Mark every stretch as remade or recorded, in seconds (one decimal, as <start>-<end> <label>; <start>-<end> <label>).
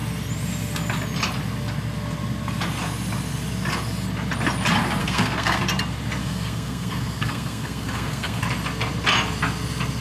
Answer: 0.0-5.0 recorded; 5.0-5.6 remade; 5.6-6.2 recorded; 6.2-8.4 remade; 8.4-10.0 recorded